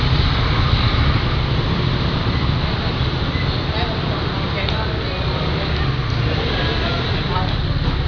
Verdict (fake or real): real